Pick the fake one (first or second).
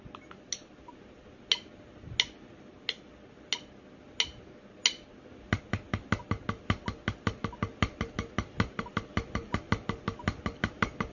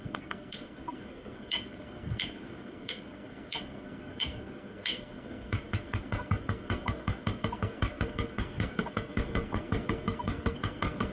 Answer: second